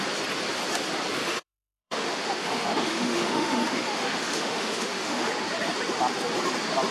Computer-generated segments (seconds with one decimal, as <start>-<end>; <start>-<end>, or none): 1.2-5.3